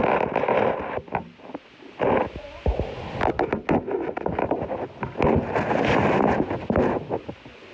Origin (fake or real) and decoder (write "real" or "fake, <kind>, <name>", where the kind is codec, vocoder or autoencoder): real